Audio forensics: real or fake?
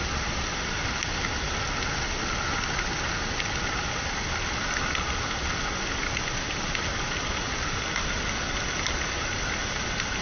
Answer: real